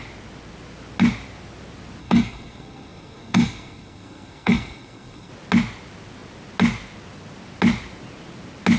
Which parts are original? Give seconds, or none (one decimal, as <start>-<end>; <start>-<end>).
0.0-2.0; 5.3-8.8

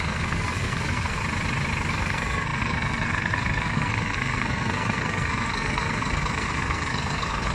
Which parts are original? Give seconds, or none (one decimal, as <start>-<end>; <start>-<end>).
1.2-1.9

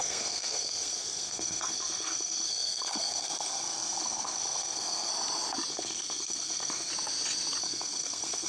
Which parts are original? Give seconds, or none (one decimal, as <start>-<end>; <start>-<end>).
5.1-5.7; 6.9-7.6

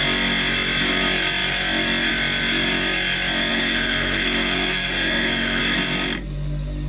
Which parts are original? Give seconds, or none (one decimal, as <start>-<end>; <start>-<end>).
0.0-3.5; 5.6-6.9

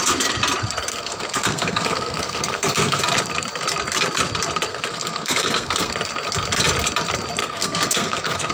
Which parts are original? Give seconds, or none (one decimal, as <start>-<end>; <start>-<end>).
0.0-0.9; 3.0-4.7; 5.9-7.4

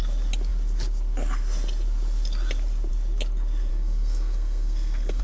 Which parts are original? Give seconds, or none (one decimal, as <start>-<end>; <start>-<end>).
0.0-3.7

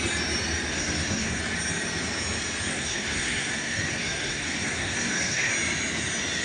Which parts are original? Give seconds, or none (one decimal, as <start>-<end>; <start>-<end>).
0.0-0.7; 1.4-2.7; 5.5-6.4

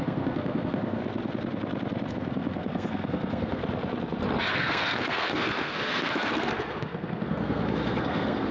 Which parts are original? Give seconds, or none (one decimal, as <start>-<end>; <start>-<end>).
1.0-2.1; 3.6-4.5